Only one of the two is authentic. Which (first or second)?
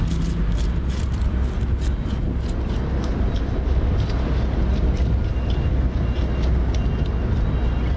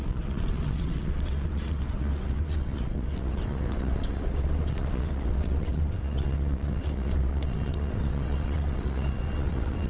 first